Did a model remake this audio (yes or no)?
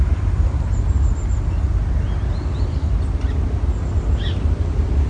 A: no